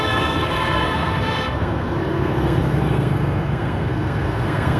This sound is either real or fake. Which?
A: fake